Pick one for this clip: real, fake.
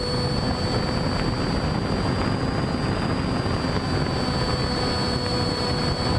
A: real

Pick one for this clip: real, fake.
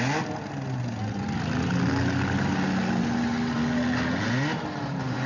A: real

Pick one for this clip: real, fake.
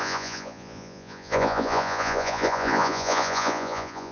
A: fake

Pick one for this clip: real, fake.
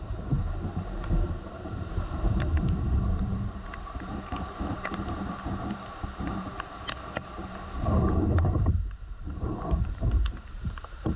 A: fake